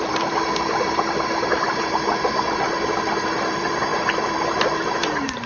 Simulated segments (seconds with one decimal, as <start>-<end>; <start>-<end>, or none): 0.0-5.5